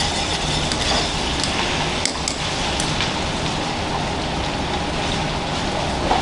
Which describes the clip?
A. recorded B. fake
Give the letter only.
A